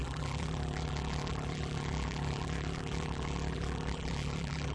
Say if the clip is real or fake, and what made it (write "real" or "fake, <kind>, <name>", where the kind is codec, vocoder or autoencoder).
fake, vocoder, BigVGAN v2